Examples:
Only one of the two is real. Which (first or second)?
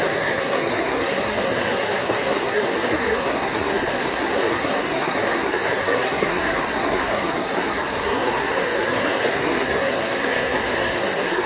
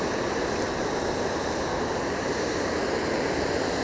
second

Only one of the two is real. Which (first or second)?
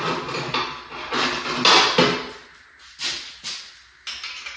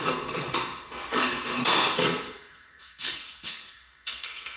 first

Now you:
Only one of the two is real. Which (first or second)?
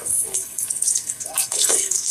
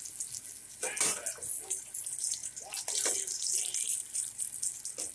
second